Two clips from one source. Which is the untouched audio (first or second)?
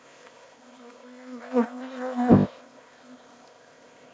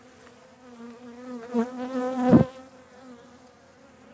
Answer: second